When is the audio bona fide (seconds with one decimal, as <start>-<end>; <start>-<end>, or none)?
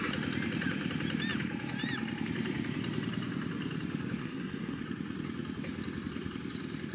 0.0-4.2; 4.8-6.9